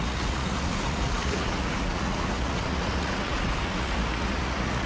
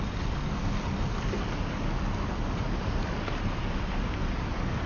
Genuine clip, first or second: second